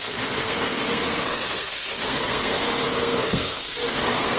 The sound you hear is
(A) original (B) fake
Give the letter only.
B